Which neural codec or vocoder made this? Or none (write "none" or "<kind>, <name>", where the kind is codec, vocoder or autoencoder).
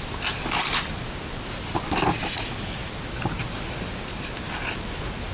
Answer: none